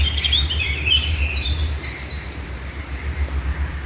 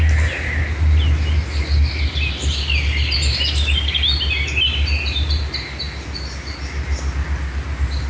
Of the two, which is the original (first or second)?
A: second